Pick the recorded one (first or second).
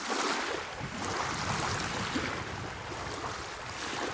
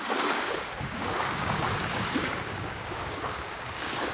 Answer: first